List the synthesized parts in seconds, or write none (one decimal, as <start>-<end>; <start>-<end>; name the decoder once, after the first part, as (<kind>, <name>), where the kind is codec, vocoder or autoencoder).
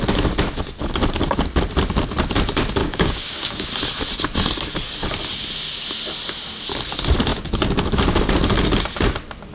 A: 2.8-3.7 (codec, DAC)